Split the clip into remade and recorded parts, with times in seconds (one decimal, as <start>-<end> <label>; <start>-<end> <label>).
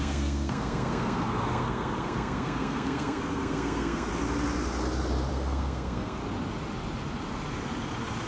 0.0-4.1 remade; 4.1-5.3 recorded; 5.3-6.2 remade; 6.2-8.3 recorded